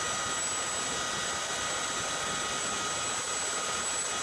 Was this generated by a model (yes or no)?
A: no